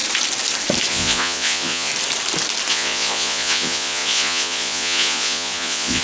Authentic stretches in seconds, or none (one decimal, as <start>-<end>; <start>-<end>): 0.0-0.9; 1.9-2.7